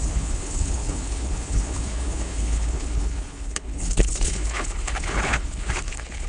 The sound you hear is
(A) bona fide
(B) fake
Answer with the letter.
B